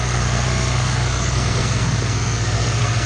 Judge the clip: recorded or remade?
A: remade